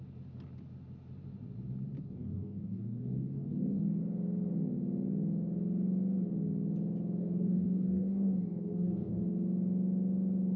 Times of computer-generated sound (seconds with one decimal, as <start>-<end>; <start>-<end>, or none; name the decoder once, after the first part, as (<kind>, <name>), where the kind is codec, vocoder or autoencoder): 2.0-4.0 (codec, DAC); 7.2-9.1